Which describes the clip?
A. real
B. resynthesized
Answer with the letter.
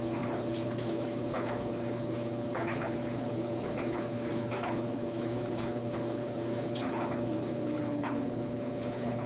B